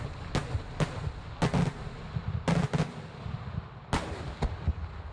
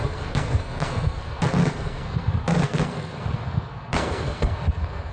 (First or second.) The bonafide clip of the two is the first